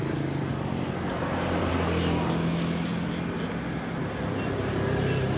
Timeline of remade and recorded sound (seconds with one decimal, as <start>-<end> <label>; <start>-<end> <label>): 0.0-0.5 recorded; 0.5-1.6 remade; 1.6-5.4 recorded